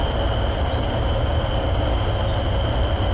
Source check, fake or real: real